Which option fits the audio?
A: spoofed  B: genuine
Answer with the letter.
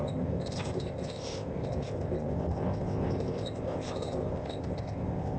A